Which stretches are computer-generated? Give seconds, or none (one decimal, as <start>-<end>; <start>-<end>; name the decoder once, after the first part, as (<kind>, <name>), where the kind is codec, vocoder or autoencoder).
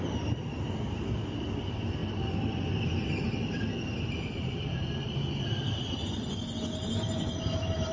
none